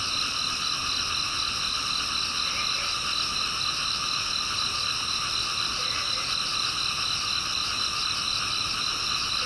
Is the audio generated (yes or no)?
no